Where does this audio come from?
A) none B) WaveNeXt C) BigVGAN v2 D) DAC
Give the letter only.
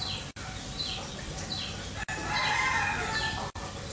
A